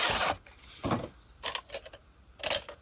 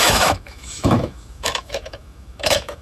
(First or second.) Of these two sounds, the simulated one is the second